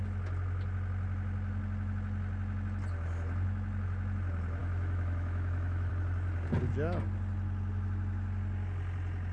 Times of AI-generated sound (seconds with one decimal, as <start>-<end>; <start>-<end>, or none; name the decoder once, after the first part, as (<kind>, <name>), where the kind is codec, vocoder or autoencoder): 4.6-5.9 (autoencoder, DAC-VAE)